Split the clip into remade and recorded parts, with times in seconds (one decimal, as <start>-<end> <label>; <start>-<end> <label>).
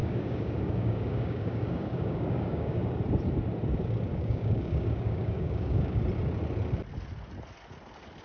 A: 0.0-3.0 remade; 3.0-4.1 recorded; 4.1-6.0 remade; 6.0-8.2 recorded